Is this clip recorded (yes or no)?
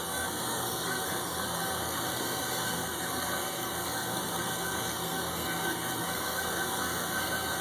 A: no